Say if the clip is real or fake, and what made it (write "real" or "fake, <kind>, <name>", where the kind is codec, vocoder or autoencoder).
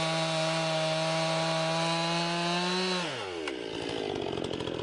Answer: real